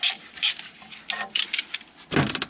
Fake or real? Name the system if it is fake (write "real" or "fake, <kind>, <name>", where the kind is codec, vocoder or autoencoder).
real